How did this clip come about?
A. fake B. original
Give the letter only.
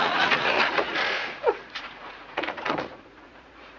A